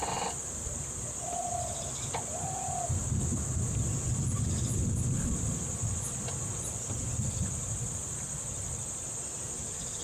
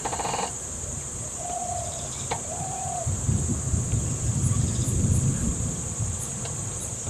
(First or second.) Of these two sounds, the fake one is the second